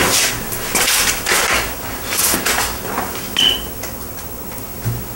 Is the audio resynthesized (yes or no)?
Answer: no